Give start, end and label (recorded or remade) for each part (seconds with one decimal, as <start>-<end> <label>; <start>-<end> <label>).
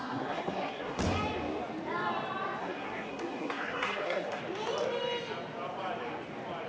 0.0-1.0 remade; 1.0-2.6 recorded; 2.6-4.4 remade; 4.4-6.7 recorded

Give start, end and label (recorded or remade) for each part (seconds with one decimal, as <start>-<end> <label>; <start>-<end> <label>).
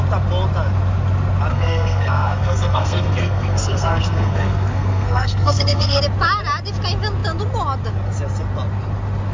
0.0-1.5 recorded; 1.5-6.0 remade; 6.0-9.3 recorded